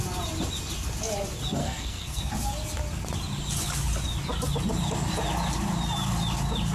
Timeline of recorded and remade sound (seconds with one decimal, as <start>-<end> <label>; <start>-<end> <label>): 0.0-1.6 recorded; 1.6-2.3 remade; 2.3-6.7 recorded